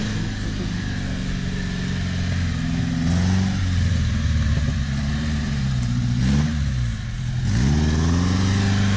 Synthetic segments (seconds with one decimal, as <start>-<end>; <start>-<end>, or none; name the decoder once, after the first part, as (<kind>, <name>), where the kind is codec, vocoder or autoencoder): 3.9-6.2 (vocoder, BigVGAN v2)